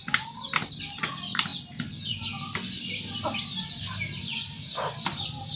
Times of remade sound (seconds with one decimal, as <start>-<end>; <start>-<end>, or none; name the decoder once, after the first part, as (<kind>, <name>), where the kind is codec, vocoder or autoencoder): none